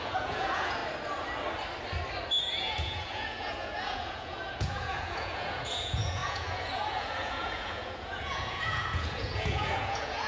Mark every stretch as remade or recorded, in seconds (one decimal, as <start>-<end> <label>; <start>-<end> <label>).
0.0-0.8 remade; 0.8-2.6 recorded; 2.6-10.3 remade